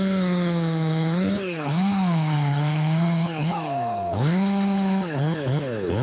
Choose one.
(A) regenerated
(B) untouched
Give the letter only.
A